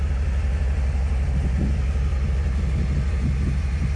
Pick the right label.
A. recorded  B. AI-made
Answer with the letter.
A